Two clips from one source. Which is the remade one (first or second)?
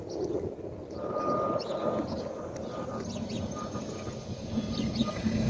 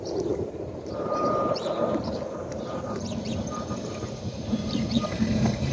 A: second